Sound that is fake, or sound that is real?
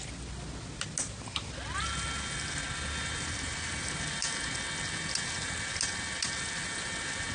real